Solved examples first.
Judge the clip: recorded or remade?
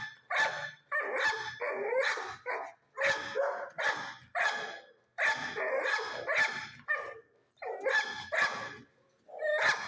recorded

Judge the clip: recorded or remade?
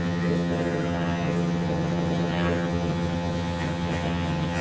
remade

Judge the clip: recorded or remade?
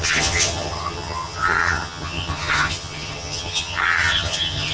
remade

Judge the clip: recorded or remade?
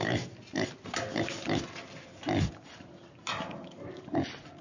recorded